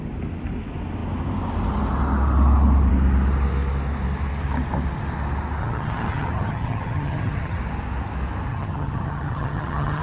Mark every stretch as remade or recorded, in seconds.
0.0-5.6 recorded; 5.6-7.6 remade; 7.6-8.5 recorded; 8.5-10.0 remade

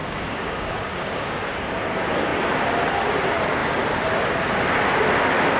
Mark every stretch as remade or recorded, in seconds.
0.0-1.4 remade; 1.4-5.6 recorded

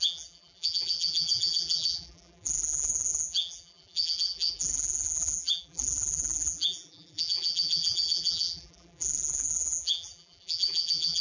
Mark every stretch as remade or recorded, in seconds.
0.0-11.2 remade

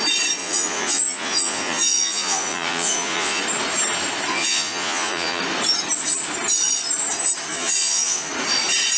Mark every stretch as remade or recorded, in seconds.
0.0-0.4 recorded; 0.4-3.4 remade; 3.4-4.3 recorded; 4.3-5.4 remade; 5.4-7.5 recorded; 7.5-8.3 remade; 8.3-9.0 recorded